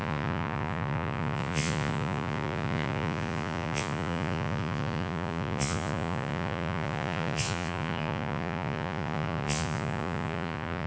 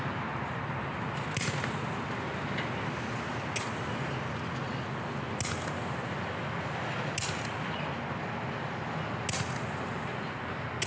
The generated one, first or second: first